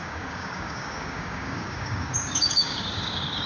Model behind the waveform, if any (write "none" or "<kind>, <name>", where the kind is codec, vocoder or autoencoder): codec, DAC